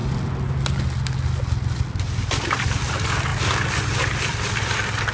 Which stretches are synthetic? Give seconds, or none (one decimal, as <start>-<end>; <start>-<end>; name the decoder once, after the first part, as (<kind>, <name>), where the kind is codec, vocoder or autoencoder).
none